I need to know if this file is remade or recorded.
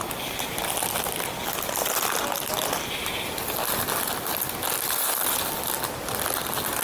recorded